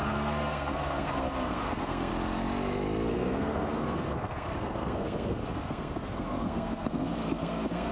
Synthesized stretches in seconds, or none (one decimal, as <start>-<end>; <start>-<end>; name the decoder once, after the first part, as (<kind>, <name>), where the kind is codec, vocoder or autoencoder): 0.0-2.1 (codec, SNAC); 3.1-7.9